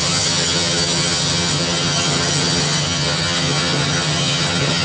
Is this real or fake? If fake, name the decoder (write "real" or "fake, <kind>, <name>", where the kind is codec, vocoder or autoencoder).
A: fake, vocoder, HiFi-GAN